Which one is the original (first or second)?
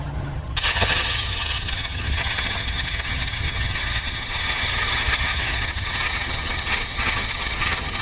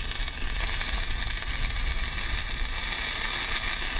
second